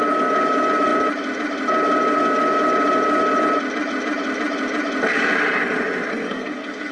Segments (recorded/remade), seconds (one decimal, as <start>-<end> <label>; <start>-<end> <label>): 0.0-6.1 recorded; 6.1-6.9 remade